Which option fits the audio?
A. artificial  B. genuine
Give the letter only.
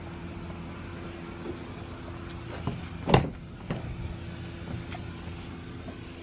B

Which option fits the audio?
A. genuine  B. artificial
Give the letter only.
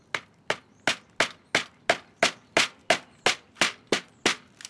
A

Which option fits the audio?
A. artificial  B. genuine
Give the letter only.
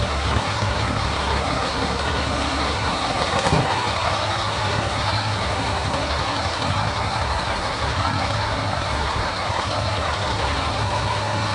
A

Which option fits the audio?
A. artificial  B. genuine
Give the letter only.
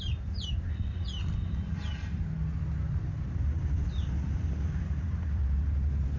B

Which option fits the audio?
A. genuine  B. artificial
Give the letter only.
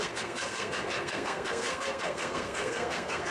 B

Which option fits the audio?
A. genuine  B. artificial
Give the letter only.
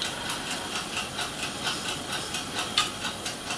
A